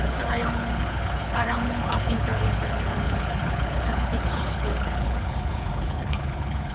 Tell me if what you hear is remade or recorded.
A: remade